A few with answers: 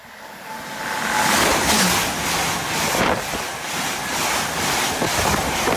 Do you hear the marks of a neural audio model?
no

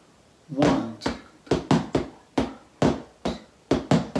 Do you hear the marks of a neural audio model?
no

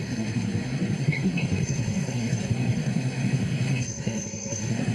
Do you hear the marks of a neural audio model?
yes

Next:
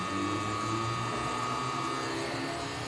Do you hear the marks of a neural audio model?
no